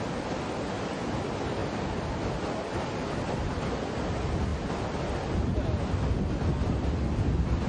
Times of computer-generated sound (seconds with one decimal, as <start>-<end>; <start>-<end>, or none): none